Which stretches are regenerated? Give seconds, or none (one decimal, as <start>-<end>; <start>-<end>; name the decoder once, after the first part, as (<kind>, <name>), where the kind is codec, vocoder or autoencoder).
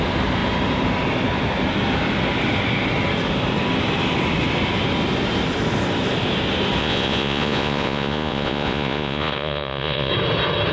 6.8-10.1 (vocoder, Vocos)